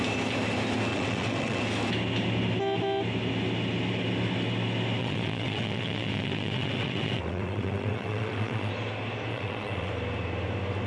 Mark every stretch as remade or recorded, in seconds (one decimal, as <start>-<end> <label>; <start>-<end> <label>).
0.0-0.9 recorded; 0.9-1.6 remade; 1.6-5.0 recorded; 5.0-8.7 remade; 8.7-9.3 recorded; 9.3-9.9 remade; 9.9-10.9 recorded